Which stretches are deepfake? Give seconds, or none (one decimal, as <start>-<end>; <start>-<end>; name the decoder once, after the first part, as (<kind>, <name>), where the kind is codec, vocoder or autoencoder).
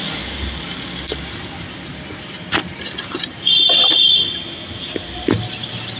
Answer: none